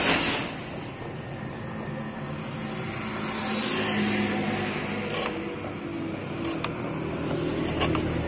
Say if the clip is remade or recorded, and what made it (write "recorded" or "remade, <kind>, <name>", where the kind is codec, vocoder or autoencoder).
recorded